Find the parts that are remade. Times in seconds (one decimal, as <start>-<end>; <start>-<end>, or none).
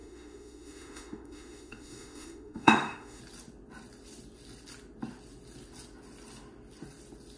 0.0-3.2